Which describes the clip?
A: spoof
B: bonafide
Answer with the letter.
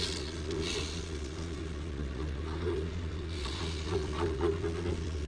A